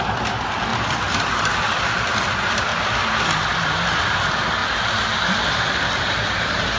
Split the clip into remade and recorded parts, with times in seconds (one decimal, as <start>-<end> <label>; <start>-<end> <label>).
0.0-0.7 remade; 0.7-1.3 recorded; 1.3-2.7 remade; 2.7-4.0 recorded; 4.0-6.8 remade